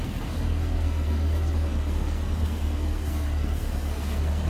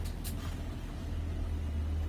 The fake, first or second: first